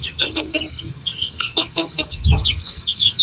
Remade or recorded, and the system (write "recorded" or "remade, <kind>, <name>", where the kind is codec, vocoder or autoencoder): remade, codec, SNAC